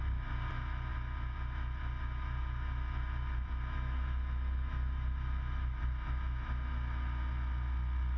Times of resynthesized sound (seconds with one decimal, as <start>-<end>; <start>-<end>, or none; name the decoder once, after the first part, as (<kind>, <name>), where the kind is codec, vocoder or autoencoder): none